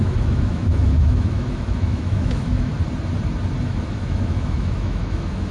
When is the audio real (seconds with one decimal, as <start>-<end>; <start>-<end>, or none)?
2.7-3.6